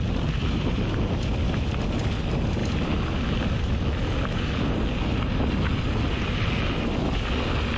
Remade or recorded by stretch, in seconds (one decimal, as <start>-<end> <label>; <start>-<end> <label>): 0.0-7.8 recorded